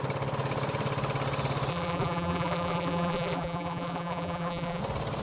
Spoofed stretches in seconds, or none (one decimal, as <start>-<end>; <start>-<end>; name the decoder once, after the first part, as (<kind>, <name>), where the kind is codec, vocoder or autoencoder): 1.7-4.8 (vocoder, BigVGAN v2)